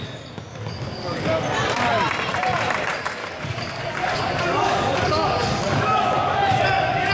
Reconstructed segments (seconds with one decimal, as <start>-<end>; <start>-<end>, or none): 0.5-1.4; 3.2-7.1